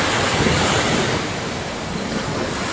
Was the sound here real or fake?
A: real